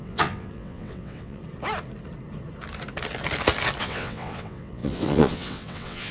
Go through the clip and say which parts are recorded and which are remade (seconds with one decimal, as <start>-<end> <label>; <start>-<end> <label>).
0.0-1.4 remade; 1.4-3.8 recorded; 3.8-6.1 remade